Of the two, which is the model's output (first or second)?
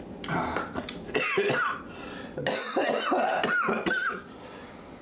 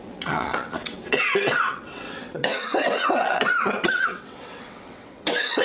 second